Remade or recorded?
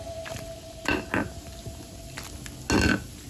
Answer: recorded